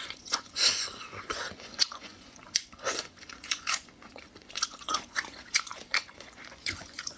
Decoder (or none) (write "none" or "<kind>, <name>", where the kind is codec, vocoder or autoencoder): vocoder, Vocos